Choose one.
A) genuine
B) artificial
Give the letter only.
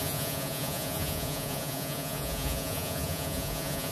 B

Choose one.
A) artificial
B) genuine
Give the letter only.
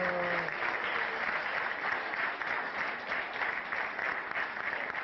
B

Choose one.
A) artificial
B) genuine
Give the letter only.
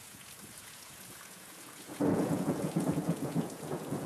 A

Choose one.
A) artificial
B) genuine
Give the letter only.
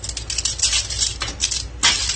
B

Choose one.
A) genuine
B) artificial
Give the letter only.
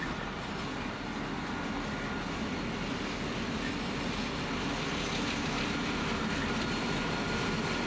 A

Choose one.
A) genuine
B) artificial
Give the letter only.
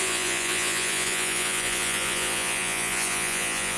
B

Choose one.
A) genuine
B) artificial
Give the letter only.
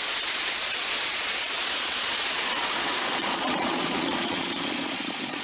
B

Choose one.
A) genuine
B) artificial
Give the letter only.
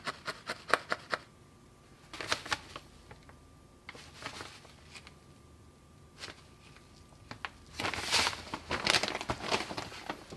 A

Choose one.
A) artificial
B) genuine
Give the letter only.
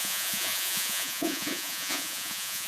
A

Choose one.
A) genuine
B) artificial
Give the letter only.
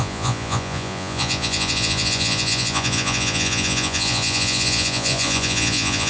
B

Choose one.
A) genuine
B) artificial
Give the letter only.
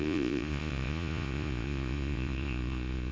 B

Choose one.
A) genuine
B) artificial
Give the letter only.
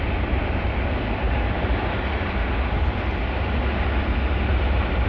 A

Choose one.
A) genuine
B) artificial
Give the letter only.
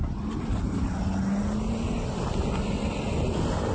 A